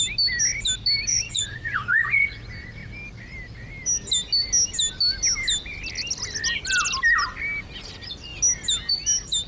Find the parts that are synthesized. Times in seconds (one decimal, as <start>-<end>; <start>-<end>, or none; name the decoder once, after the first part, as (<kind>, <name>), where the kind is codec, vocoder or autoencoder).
1.1-2.3 (vocoder, Vocos)